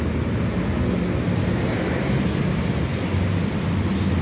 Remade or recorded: recorded